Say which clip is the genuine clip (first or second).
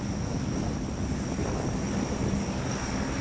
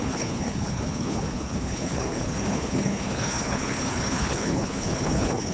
first